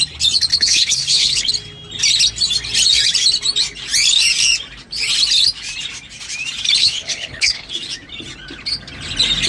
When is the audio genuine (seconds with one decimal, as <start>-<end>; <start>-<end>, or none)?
0.0-0.5; 1.5-6.8; 7.7-9.5